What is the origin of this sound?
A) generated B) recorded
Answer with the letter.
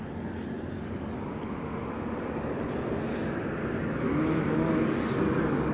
B